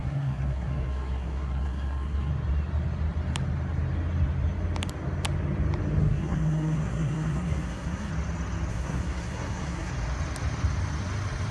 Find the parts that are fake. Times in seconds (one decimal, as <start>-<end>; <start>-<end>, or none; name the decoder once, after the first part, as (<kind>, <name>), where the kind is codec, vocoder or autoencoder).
0.0-2.3 (codec, SNAC); 6.0-8.1; 8.7-9.9